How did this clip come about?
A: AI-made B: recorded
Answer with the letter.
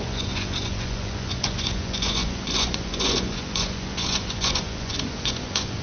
A